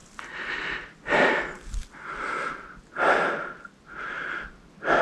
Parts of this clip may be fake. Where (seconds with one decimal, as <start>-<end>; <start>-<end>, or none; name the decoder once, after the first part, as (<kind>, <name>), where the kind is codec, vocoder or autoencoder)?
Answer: none